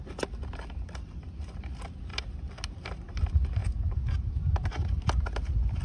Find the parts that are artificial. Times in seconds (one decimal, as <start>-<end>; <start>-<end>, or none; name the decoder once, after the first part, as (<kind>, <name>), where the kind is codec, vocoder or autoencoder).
3.6-4.3 (vocoder, Vocos)